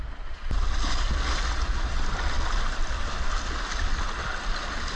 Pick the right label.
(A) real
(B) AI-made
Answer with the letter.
A